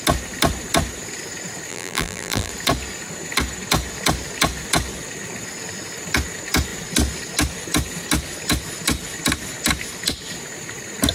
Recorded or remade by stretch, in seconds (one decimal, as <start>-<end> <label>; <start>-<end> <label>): 0.0-1.7 recorded; 1.7-2.5 remade; 2.5-11.1 recorded